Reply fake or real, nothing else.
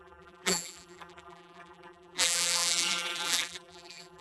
fake